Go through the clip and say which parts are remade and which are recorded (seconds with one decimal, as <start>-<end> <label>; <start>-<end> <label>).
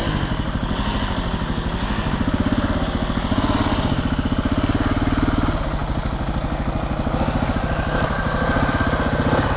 0.0-9.6 recorded